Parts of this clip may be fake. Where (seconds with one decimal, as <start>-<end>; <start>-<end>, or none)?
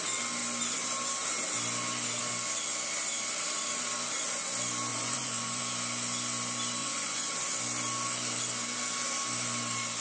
4.9-5.6; 6.8-7.3